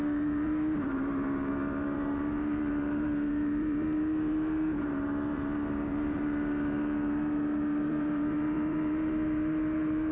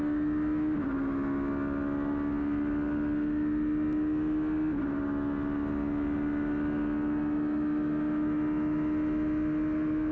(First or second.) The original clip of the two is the second